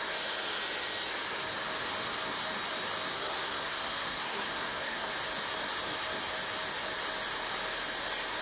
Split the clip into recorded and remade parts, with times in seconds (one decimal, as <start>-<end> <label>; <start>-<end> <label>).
0.0-3.1 recorded; 3.1-5.1 remade; 5.1-8.4 recorded